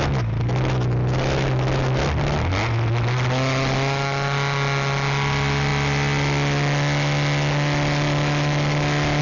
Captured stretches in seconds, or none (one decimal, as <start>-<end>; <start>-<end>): 0.0-9.2